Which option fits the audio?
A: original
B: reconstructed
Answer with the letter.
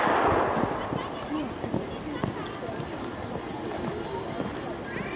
A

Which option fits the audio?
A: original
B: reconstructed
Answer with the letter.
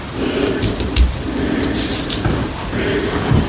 A